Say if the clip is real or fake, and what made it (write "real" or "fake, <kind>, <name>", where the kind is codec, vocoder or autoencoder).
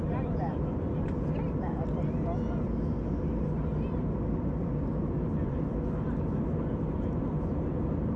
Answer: real